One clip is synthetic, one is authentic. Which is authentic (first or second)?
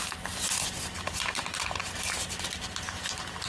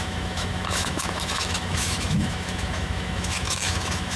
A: first